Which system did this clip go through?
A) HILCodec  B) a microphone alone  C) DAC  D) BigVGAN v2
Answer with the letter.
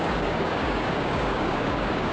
C